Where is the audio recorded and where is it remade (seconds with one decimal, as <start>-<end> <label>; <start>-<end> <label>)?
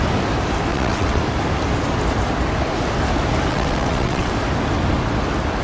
0.0-0.7 recorded; 0.7-1.2 remade; 1.2-3.5 recorded; 3.5-4.3 remade; 4.3-5.6 recorded